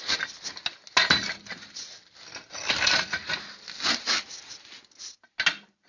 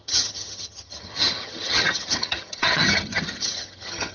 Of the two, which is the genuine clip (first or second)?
first